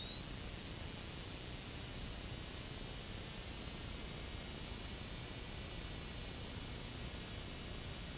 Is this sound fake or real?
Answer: real